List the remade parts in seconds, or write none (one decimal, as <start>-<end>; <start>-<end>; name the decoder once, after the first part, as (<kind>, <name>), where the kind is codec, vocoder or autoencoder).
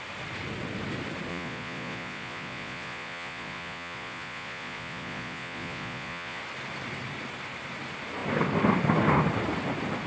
1.3-6.4 (vocoder, Vocos)